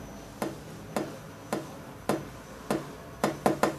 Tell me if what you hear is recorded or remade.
recorded